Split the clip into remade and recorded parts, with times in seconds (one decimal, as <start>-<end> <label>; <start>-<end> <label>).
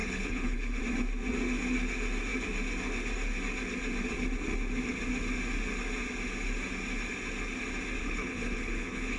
0.0-0.8 remade; 0.8-8.0 recorded; 8.0-9.2 remade